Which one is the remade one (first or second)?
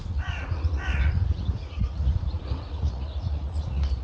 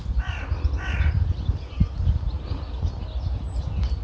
first